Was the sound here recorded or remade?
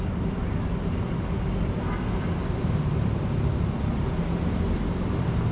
recorded